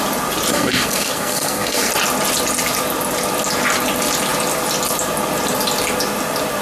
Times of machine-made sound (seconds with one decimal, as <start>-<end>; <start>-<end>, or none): 0.5-1.9